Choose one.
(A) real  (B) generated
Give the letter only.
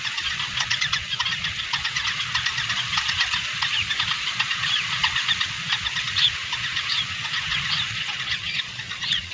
B